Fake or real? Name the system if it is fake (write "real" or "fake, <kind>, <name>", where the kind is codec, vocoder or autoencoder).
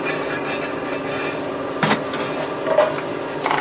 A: real